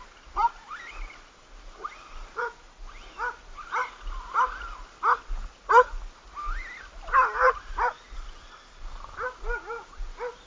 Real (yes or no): yes